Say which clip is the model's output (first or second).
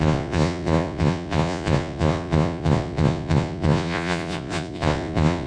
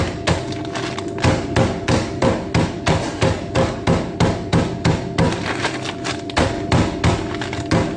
first